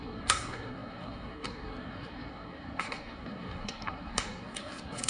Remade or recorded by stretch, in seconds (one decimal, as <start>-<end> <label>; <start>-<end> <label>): 0.0-5.1 remade